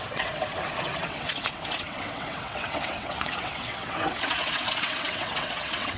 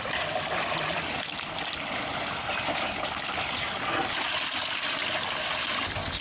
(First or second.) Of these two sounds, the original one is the second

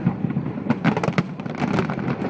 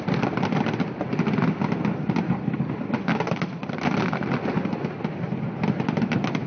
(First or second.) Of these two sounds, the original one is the second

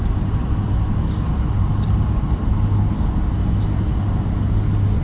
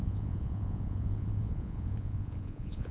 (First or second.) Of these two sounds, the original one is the first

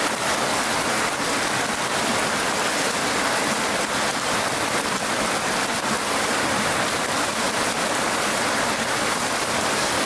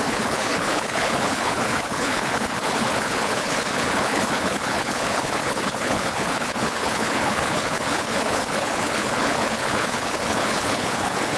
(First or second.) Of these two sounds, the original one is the first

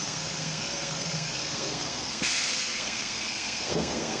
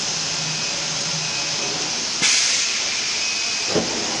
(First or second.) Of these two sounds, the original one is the second